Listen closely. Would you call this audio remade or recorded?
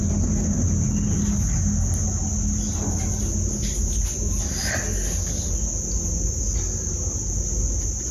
recorded